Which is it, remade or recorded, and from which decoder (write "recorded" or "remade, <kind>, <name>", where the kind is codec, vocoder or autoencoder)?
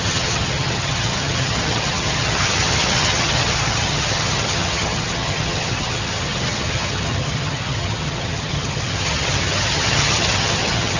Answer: remade, vocoder, HiFi-GAN